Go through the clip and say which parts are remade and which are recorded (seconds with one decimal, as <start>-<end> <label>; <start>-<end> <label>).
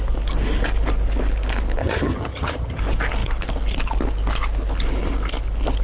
0.0-1.8 recorded; 1.8-2.8 remade; 2.8-5.8 recorded